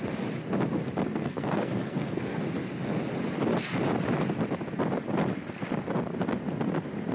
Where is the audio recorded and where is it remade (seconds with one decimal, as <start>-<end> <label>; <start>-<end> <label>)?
0.0-1.1 recorded; 1.1-2.4 remade; 2.4-7.1 recorded